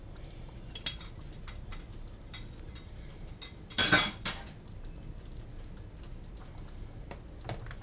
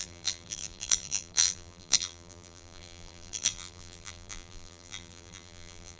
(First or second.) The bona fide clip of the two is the first